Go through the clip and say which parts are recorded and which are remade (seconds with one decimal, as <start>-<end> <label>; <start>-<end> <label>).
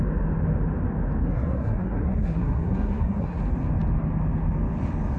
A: 0.0-1.2 recorded; 1.2-3.4 remade; 3.4-5.2 recorded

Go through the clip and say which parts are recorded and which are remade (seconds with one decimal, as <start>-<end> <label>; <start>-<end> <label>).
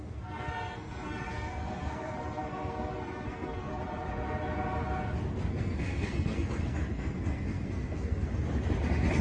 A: 0.0-3.7 remade; 3.7-5.5 recorded; 5.5-8.3 remade; 8.3-9.2 recorded